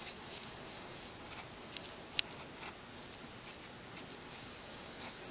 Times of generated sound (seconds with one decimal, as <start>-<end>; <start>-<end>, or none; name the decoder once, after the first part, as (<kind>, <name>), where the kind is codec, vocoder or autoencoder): 0.0-1.1 (codec, DAC); 4.3-5.3